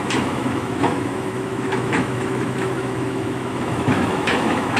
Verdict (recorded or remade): remade